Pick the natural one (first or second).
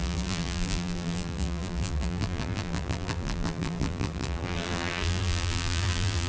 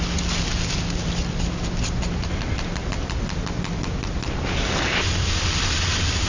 second